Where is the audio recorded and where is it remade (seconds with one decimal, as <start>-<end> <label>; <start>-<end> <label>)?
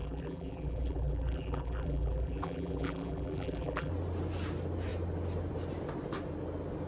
0.0-3.9 remade; 3.9-6.9 recorded